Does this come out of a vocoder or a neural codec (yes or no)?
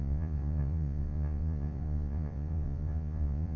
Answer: yes